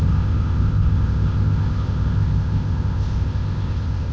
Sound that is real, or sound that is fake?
fake